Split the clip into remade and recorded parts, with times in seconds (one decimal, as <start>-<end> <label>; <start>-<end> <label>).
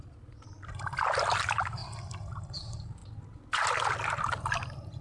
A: 0.0-5.0 recorded